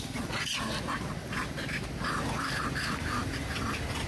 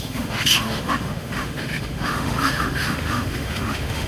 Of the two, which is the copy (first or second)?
second